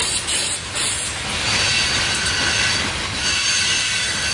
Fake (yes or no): no